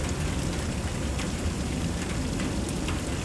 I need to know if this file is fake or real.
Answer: real